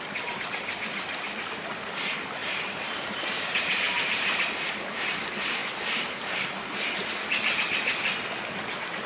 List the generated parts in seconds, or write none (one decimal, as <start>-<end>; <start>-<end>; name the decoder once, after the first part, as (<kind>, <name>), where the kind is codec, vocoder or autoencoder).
2.4-4.4 (vocoder, BigVGAN v2); 5.6-6.9